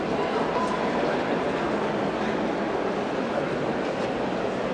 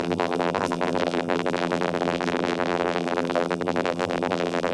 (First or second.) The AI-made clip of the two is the second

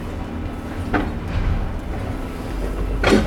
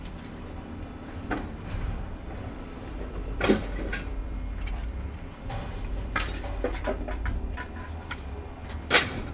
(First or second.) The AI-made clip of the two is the second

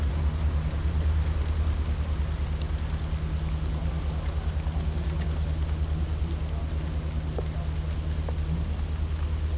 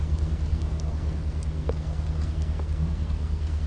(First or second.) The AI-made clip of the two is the second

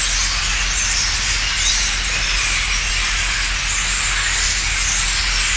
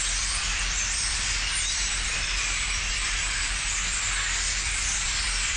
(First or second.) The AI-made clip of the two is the second